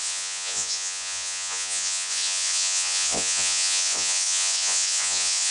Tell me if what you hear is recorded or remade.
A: remade